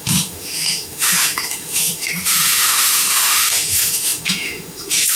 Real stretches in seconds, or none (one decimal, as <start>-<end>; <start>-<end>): none